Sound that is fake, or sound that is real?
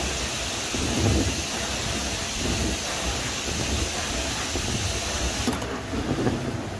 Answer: real